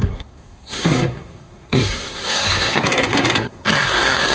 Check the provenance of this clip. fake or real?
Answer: fake